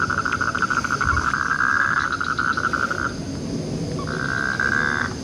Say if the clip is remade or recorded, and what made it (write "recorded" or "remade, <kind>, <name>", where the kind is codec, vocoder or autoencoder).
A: recorded